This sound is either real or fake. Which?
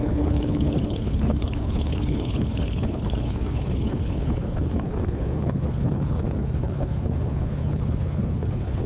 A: fake